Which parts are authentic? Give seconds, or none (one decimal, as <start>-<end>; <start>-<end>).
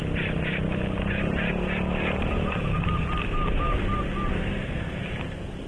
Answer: 0.0-4.3; 5.0-5.7